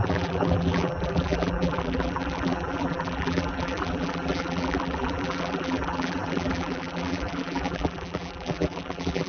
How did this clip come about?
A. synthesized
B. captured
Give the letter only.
A